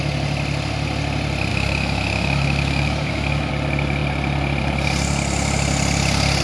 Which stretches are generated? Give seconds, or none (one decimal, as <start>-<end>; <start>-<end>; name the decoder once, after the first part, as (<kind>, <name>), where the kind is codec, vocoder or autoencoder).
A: 1.5-3.5 (autoencoder, DAC-VAE)